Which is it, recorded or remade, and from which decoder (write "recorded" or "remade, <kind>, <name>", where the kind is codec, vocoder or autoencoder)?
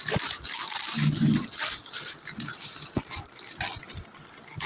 recorded